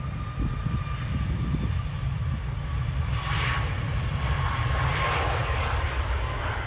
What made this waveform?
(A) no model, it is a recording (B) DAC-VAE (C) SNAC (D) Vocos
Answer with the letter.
A